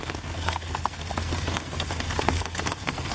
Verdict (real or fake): fake